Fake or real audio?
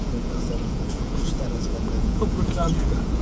fake